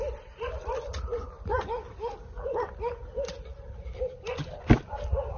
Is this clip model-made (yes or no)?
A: no